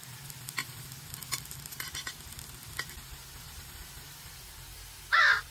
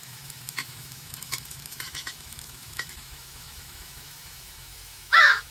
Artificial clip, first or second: second